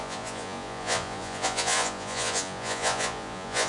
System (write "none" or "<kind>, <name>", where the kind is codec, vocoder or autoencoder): vocoder, Vocos